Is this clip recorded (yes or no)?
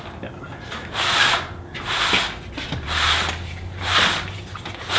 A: yes